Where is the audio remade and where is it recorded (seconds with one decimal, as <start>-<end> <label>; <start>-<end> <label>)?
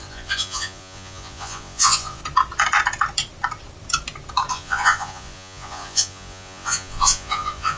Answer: 0.0-2.2 remade; 2.2-4.5 recorded; 4.5-7.8 remade